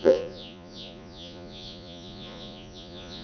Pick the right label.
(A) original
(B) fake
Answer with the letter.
B